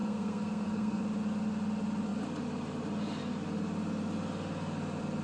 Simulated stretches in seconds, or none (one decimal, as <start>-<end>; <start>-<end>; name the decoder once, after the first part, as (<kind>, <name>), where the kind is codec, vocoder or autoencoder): 0.0-1.0 (codec, SNAC)